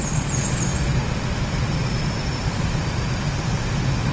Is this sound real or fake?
real